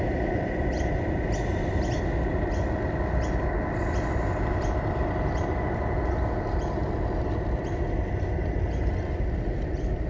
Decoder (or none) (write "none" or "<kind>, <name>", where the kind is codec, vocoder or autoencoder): none